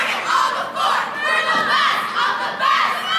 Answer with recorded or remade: recorded